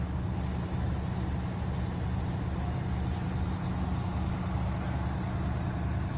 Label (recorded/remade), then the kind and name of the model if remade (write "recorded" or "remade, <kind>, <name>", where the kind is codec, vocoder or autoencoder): recorded